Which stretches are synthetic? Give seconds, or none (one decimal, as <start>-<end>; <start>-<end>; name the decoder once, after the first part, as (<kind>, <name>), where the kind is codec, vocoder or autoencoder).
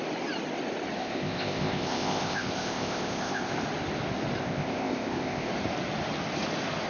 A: 1.0-3.5 (codec, ZipCodec); 4.4-5.5